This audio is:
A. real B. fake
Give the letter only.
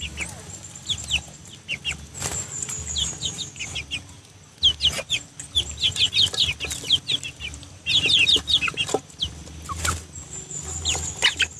A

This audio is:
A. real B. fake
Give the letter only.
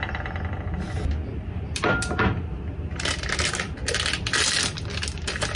A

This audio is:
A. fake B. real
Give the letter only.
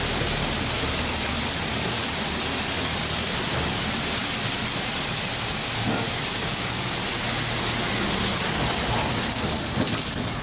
B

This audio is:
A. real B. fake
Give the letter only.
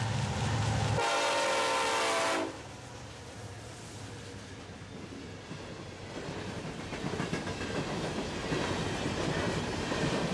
A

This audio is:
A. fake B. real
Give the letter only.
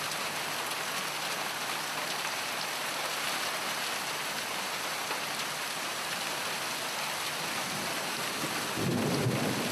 B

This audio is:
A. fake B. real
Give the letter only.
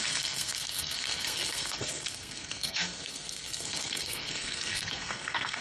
A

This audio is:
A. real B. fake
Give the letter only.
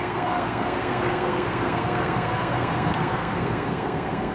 B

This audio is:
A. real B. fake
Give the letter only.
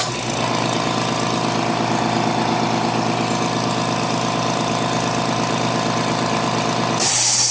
A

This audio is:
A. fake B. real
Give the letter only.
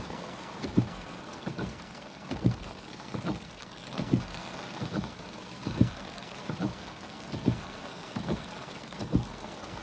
A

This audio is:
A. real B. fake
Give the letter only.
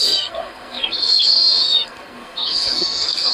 B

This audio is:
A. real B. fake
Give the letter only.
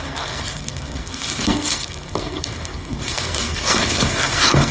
B